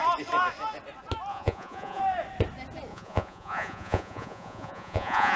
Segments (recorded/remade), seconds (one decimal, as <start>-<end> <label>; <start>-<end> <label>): 0.0-1.3 recorded; 1.3-2.0 remade; 2.0-2.9 recorded; 2.9-5.4 remade